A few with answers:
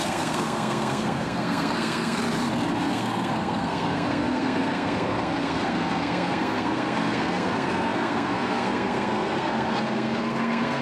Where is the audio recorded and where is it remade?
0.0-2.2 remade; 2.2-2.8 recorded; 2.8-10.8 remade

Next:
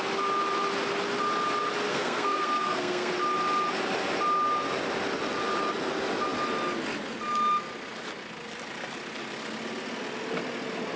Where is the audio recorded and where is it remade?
0.0-1.9 recorded; 1.9-3.1 remade; 3.1-11.0 recorded

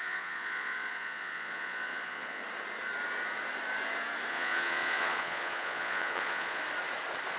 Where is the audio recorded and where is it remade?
0.0-2.4 remade; 2.4-4.3 recorded; 4.3-6.6 remade; 6.6-7.4 recorded

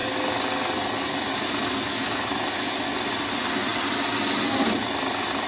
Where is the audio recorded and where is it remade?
0.0-5.5 recorded

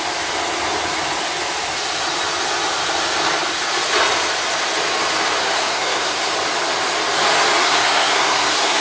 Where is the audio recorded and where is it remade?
0.0-5.4 recorded; 5.4-6.3 remade; 6.3-7.6 recorded; 7.6-8.8 remade

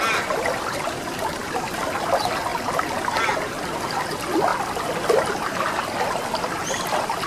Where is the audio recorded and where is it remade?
0.0-7.3 recorded

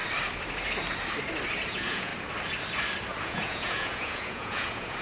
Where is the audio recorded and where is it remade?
0.0-1.7 recorded; 1.7-2.1 remade; 2.1-3.2 recorded; 3.2-5.0 remade

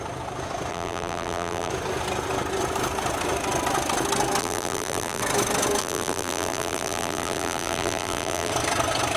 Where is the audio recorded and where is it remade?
0.0-0.7 recorded; 0.7-1.7 remade; 1.7-4.4 recorded; 4.4-5.2 remade; 5.2-5.8 recorded; 5.8-8.5 remade; 8.5-9.2 recorded